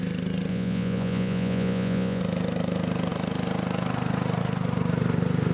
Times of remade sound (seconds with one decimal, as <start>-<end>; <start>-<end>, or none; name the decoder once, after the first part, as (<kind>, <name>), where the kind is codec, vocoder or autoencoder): 0.5-2.2 (vocoder, Vocos)